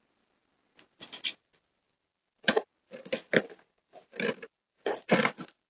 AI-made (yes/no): no